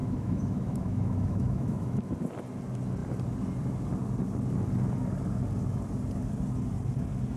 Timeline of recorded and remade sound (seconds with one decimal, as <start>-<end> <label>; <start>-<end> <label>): 0.0-2.1 remade; 2.1-7.4 recorded